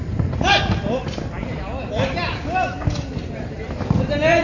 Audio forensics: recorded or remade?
recorded